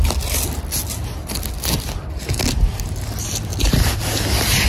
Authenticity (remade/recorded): recorded